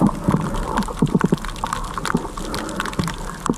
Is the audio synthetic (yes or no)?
no